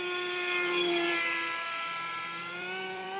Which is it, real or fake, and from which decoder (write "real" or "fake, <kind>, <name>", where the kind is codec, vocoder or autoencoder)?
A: fake, vocoder, BigVGAN v2